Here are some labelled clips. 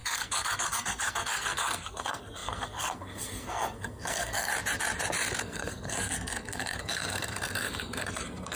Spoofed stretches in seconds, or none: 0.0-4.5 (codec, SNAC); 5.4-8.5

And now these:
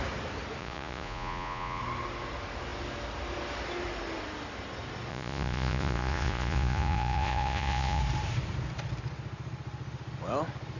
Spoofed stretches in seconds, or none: 0.6-1.8 (vocoder, Vocos); 5.1-8.0

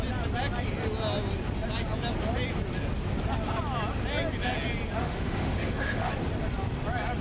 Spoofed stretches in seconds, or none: 5.0-6.1 (autoencoder, DAC-VAE)

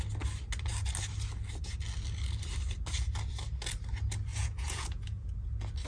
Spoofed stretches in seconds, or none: 4.3-5.3 (vocoder, Vocos)

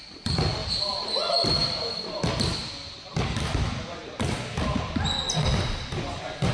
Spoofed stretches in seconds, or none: none

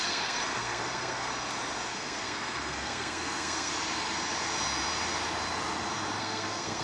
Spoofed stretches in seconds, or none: 0.0-1.3 (codec, SNAC); 1.9-3.7; 6.2-6.8

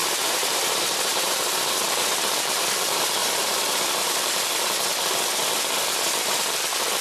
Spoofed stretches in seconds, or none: 0.0-1.6 (vocoder, BigVGAN v2); 3.2-4.5

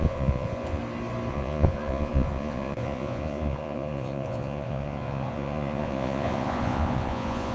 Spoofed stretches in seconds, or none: 0.0-0.8 (vocoder, Vocos); 1.3-7.5